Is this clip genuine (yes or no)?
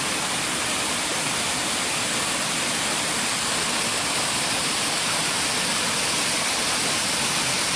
yes